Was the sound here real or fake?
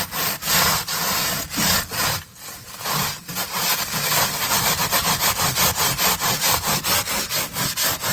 real